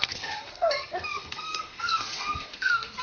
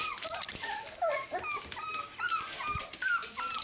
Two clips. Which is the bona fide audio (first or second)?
second